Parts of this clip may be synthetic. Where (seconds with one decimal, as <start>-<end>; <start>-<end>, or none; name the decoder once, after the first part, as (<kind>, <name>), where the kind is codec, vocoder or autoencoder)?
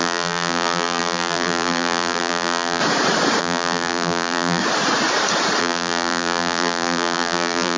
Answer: 0.0-2.8 (vocoder, BigVGAN v2); 3.4-4.6; 5.6-7.8